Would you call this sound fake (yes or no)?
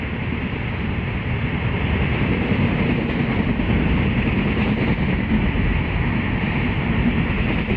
no